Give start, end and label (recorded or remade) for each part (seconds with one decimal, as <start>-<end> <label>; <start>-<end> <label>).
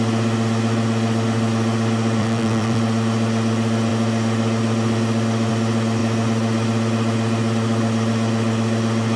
0.0-2.2 recorded; 2.2-2.8 remade; 2.8-9.2 recorded